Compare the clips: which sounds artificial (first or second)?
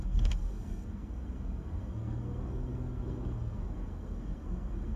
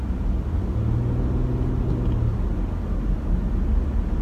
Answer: first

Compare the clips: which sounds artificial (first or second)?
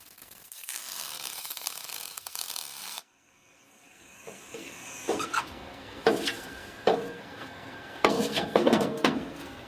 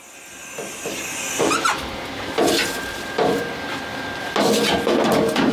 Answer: first